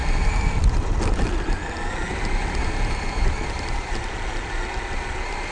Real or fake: real